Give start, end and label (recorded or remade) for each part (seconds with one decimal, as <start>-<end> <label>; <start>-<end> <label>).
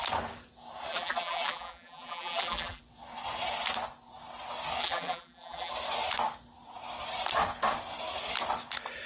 0.0-0.9 recorded; 0.9-2.8 remade; 2.8-4.8 recorded; 4.8-5.7 remade; 5.7-9.1 recorded